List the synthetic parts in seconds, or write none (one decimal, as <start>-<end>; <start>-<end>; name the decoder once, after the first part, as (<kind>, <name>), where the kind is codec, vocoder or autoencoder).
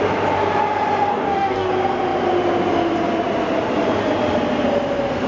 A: 1.1-1.7 (codec, DAC)